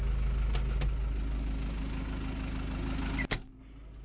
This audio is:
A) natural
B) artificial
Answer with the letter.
A